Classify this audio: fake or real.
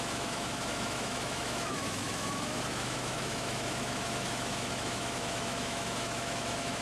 fake